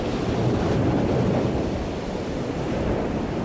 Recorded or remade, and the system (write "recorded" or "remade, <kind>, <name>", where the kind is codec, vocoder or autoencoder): recorded